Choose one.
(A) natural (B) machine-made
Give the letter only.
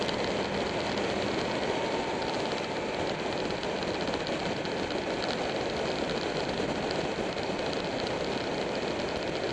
A